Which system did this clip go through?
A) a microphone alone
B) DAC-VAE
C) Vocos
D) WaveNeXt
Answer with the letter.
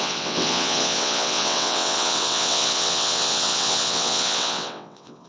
D